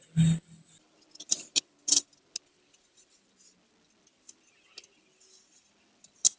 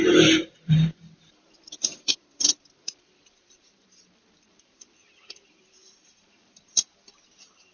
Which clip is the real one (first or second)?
first